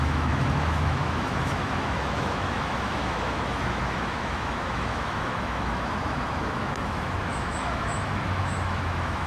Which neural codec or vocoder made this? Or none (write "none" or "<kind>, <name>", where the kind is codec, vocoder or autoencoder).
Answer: autoencoder, DAC-VAE